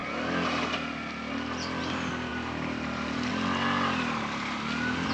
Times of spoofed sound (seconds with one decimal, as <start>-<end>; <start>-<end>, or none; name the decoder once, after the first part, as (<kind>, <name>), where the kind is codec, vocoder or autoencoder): 2.3-3.3 (vocoder, BigVGAN v2)